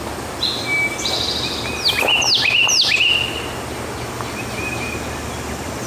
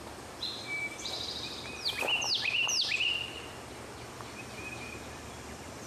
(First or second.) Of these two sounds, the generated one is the second